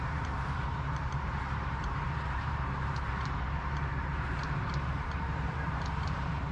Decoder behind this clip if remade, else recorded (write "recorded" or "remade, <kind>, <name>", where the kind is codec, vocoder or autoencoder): remade, vocoder, BigVGAN v2